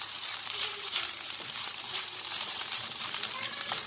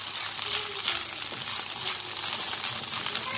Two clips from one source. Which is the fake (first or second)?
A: first